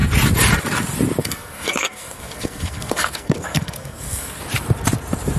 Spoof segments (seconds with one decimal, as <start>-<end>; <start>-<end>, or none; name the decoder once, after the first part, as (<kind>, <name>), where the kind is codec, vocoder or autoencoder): 1.2-4.4 (codec, SNAC)